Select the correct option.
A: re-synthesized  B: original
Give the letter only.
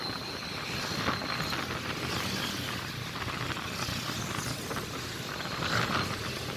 B